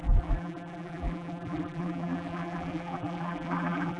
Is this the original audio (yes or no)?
no